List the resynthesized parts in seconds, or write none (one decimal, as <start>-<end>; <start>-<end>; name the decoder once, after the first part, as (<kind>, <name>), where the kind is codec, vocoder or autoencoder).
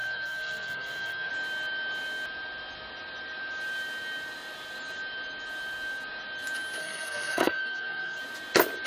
0.0-1.3 (codec, SNAC); 6.8-8.2